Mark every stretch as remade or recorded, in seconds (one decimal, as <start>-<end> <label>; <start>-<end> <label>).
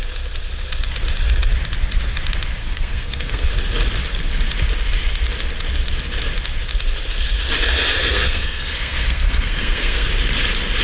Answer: 0.0-2.6 recorded; 2.6-3.5 remade; 3.5-8.0 recorded; 8.0-10.1 remade; 10.1-10.8 recorded